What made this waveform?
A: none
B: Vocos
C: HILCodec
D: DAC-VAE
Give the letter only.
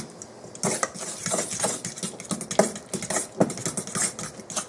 A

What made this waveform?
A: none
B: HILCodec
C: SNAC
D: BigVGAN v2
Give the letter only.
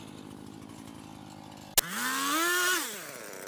A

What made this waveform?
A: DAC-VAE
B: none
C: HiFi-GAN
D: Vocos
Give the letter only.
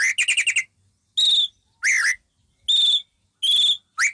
B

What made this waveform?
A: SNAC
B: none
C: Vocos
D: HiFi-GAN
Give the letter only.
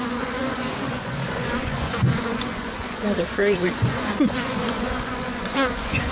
C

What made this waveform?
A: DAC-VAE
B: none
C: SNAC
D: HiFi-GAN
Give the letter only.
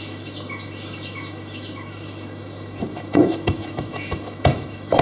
A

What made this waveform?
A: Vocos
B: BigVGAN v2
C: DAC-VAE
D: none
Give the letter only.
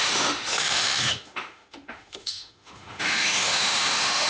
C